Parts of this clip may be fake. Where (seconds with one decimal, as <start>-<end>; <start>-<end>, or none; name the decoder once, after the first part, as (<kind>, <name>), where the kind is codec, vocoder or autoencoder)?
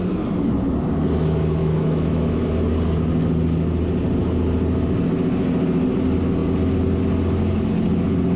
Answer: 1.6-2.5 (autoencoder, DAC-VAE)